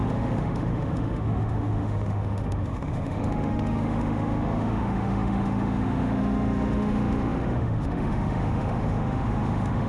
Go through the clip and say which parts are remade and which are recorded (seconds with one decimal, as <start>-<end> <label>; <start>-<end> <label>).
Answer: 0.0-9.9 remade